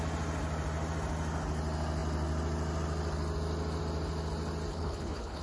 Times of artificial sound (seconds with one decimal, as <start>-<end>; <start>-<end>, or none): 4.7-5.4

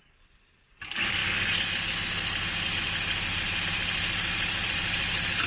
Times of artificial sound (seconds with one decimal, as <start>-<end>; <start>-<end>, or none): 0.0-1.2; 3.7-5.5

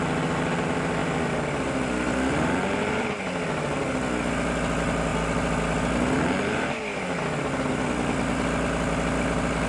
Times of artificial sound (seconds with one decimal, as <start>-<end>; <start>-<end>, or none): none

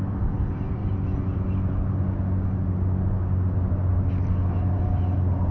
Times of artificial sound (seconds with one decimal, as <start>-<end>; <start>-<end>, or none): none

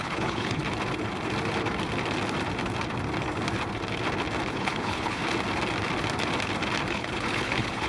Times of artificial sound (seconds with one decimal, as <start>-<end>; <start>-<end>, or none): 0.0-0.6; 4.5-5.2; 6.9-7.9